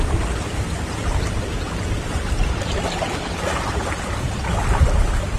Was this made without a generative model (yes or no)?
yes